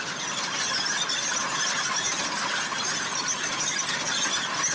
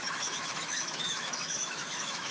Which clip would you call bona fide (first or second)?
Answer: first